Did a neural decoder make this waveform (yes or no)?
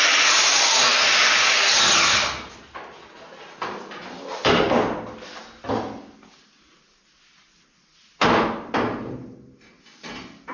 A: no